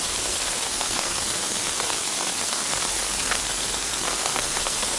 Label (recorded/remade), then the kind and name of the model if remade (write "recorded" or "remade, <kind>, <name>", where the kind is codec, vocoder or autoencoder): remade, codec, SNAC